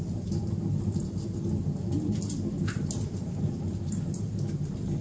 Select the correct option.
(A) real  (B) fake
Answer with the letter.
A